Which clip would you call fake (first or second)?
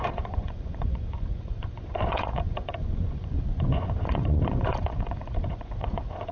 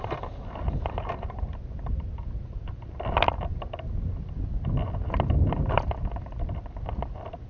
first